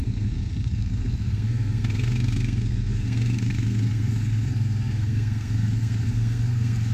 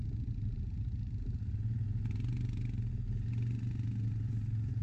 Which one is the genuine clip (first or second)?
second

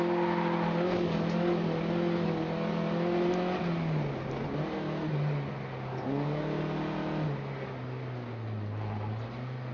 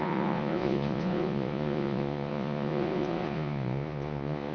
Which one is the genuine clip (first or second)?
first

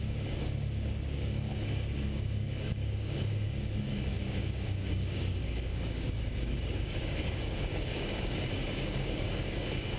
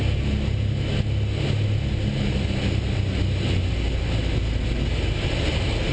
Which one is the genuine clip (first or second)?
second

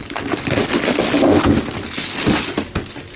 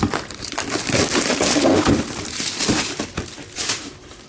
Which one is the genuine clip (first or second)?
first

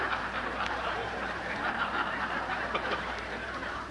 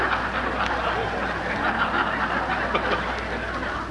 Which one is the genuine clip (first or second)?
second